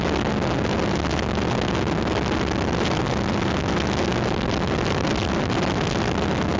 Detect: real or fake real